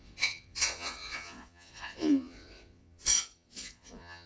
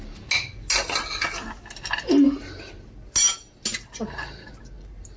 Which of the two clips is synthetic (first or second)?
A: first